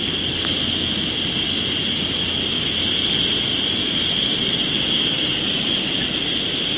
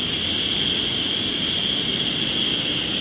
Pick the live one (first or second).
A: first